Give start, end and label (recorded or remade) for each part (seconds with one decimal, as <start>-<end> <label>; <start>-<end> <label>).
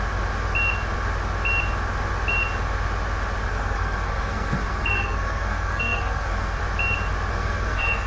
0.0-3.5 recorded; 3.5-6.6 remade; 6.6-7.3 recorded; 7.3-8.1 remade